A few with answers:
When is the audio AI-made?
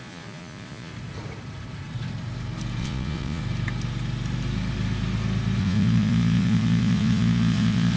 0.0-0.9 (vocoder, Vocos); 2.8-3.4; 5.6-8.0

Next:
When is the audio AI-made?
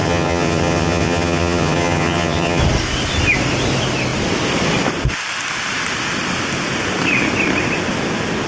0.0-2.6 (vocoder, HiFi-GAN)